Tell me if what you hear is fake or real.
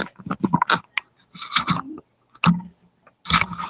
real